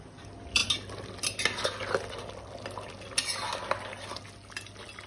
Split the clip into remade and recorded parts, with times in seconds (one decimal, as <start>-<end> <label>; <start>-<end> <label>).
0.0-5.1 recorded

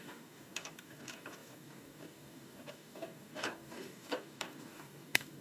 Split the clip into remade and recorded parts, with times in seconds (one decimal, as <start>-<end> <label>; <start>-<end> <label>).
0.0-5.4 remade

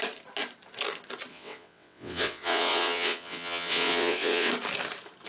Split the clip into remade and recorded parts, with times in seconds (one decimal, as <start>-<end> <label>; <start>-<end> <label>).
0.0-1.3 recorded; 1.3-4.5 remade; 4.5-5.3 recorded

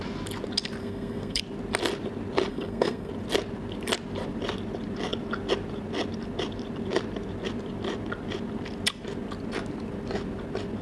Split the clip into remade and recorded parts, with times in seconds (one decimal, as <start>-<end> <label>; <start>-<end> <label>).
0.0-0.8 recorded; 0.8-1.4 remade; 1.4-2.5 recorded; 2.5-3.1 remade; 3.1-10.8 recorded

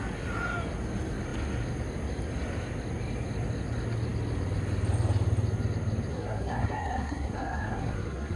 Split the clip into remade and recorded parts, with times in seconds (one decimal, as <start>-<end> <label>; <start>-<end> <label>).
0.0-6.1 recorded; 6.1-8.4 remade

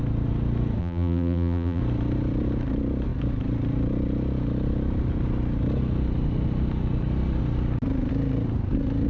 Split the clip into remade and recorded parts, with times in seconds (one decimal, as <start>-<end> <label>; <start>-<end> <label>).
0.0-0.8 recorded; 0.8-1.8 remade; 1.8-9.1 recorded

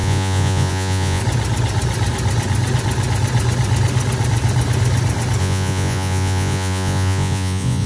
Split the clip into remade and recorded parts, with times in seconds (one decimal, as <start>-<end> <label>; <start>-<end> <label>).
0.0-1.2 remade; 1.2-5.4 recorded; 5.4-7.9 remade

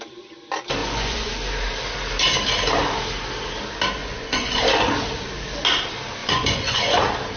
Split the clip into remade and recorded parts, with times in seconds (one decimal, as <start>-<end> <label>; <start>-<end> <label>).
0.0-0.8 recorded; 0.8-1.3 remade; 1.3-4.0 recorded; 4.0-4.6 remade; 4.6-6.2 recorded; 6.2-7.0 remade; 7.0-7.4 recorded